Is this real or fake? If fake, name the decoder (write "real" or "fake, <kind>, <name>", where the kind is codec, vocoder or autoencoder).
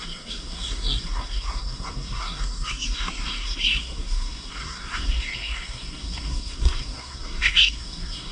fake, codec, SNAC